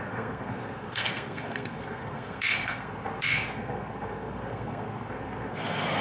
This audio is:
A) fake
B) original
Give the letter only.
A